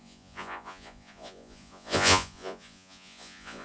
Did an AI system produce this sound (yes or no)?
yes